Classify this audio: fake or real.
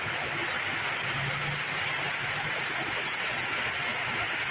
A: real